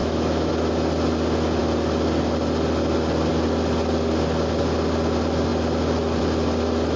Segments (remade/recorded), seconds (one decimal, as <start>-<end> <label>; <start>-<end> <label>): 0.0-0.5 remade; 0.5-7.0 recorded